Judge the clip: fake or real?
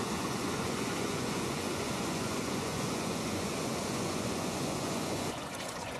fake